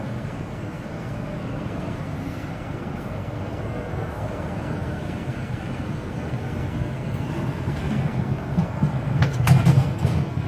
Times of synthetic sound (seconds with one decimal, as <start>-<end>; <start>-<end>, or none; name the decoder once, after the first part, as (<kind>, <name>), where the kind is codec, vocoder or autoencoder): 0.0-10.5 (codec, SNAC)